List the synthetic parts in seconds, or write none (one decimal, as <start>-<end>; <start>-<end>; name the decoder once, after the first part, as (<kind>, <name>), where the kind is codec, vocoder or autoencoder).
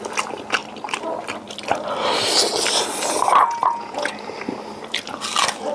3.4-4.1 (vocoder, Vocos)